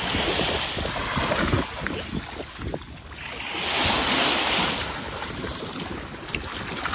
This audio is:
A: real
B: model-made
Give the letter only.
A